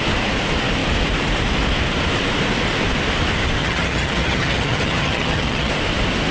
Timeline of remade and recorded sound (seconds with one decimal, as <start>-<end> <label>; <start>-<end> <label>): 0.0-3.6 recorded; 3.6-5.7 remade; 5.7-6.3 recorded